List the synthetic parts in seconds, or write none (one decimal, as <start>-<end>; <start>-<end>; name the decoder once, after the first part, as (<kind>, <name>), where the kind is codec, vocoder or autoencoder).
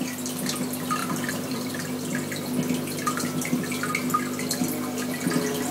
1.0-1.7 (vocoder, BigVGAN v2)